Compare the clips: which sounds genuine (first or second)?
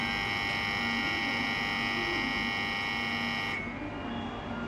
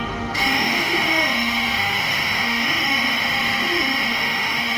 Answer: first